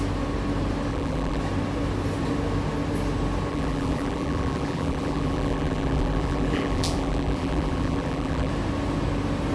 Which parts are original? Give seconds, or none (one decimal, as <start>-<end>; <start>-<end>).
0.0-0.9; 1.4-3.5; 8.5-9.5

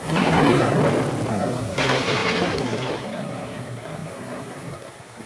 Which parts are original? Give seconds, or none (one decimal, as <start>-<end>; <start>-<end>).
0.8-1.3

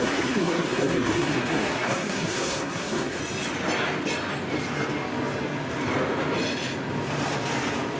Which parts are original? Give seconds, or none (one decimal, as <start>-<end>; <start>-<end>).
3.2-8.0

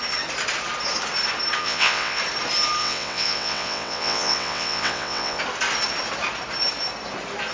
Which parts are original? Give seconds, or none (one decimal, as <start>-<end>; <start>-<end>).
0.0-1.6; 2.2-2.8; 5.4-7.5

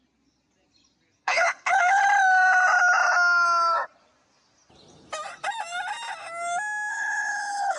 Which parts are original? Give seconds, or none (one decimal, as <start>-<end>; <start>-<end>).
0.0-1.2; 2.0-6.9